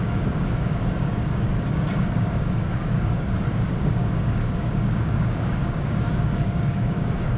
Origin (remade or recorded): remade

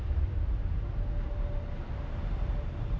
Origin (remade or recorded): remade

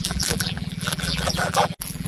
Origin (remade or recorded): remade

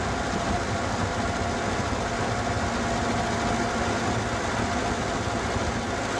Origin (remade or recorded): recorded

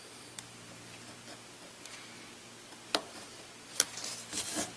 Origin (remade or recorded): recorded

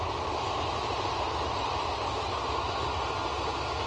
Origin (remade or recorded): recorded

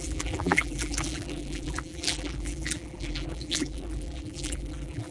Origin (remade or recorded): remade